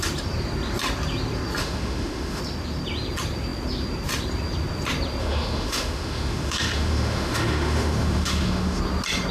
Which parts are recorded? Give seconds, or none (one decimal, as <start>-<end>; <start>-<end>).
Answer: 0.0-1.6; 2.4-5.2; 8.8-9.3